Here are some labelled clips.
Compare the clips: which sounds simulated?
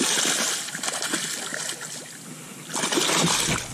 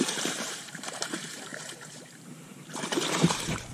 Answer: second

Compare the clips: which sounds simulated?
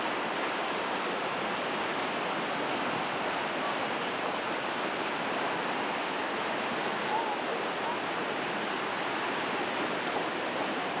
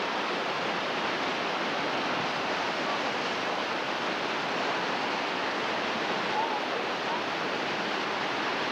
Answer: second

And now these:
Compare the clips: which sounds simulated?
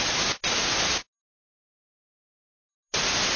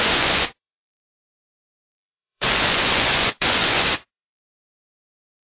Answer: second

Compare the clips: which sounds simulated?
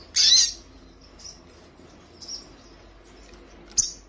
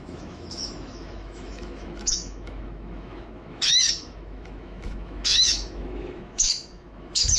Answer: second